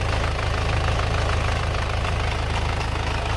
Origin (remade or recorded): recorded